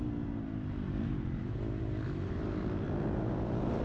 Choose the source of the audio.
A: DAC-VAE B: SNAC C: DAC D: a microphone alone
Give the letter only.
D